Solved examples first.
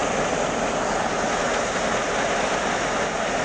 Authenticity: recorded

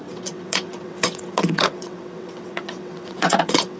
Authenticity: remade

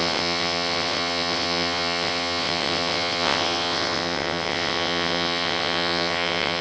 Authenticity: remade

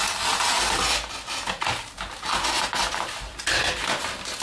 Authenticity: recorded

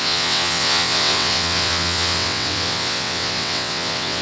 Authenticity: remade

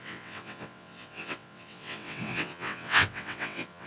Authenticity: remade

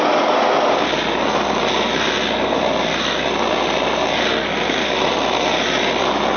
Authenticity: recorded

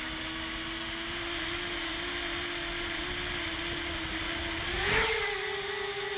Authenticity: recorded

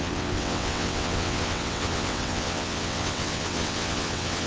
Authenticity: remade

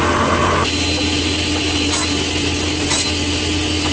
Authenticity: recorded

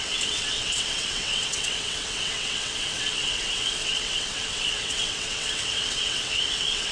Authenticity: remade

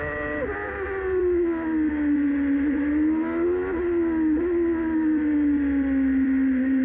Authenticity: recorded